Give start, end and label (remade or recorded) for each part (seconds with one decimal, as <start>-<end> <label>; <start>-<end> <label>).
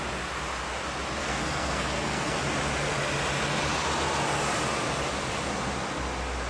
0.0-1.2 recorded; 1.2-2.4 remade; 2.4-6.5 recorded